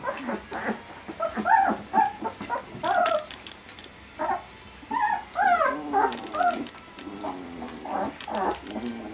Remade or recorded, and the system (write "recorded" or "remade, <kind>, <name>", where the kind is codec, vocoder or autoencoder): recorded